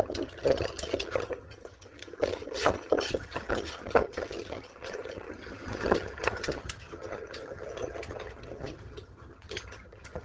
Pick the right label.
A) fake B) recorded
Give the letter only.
A